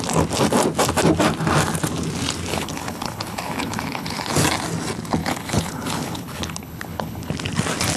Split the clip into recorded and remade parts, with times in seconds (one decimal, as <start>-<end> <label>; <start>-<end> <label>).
0.0-2.5 recorded; 2.5-4.3 remade; 4.3-5.2 recorded; 5.2-7.3 remade; 7.3-8.0 recorded